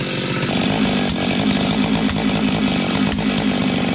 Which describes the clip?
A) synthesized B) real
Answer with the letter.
B